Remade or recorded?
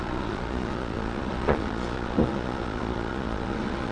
remade